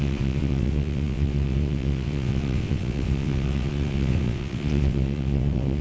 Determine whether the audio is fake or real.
fake